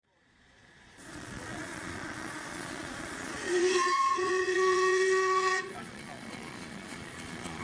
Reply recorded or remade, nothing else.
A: remade